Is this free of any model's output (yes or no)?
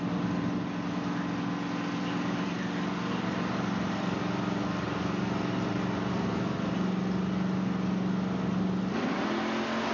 yes